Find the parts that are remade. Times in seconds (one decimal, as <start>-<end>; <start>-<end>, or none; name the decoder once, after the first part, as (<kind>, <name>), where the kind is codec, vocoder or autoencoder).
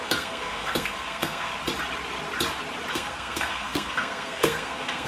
0.0-1.5 (codec, SNAC); 2.9-5.1